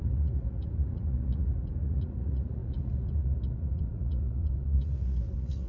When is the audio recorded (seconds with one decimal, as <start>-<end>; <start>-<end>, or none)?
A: none